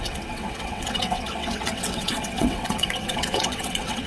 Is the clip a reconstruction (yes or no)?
yes